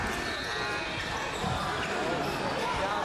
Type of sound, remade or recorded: remade